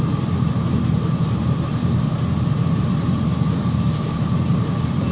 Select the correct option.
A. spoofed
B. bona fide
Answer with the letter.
A